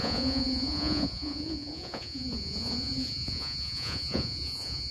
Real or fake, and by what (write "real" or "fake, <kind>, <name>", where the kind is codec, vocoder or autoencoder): fake, vocoder, Vocos